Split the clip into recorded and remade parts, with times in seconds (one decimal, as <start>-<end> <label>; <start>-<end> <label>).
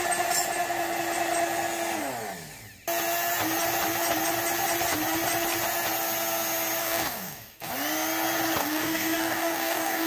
0.0-6.8 recorded; 6.8-7.7 remade; 7.7-8.6 recorded; 8.6-10.1 remade